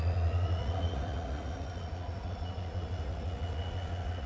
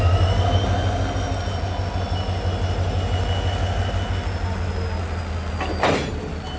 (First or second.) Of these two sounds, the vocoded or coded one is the first